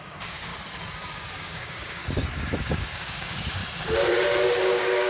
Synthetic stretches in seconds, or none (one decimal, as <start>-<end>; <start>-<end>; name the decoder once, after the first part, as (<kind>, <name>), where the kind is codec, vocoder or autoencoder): 0.0-0.5 (codec, DAC); 1.3-2.0; 2.6-3.6; 4.6-5.1